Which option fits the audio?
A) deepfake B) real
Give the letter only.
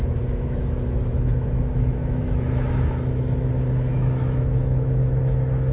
A